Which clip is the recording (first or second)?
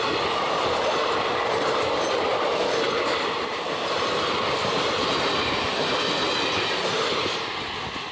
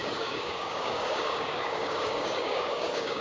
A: first